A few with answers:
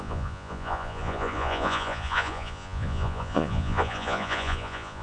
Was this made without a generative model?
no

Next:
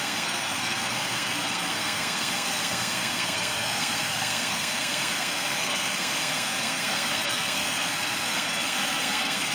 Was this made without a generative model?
no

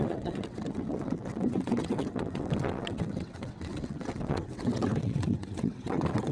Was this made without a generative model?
no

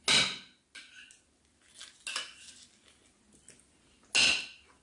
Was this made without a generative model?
yes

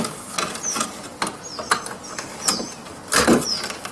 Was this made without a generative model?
yes